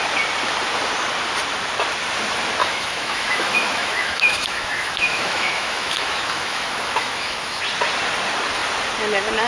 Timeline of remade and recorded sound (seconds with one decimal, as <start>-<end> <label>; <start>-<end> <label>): 0.0-2.6 recorded; 2.6-7.6 remade; 7.6-9.5 recorded